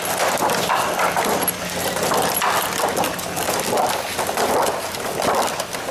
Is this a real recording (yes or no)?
yes